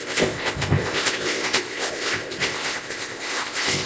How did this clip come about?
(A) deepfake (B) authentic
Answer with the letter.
A